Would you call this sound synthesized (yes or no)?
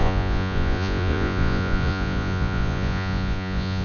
yes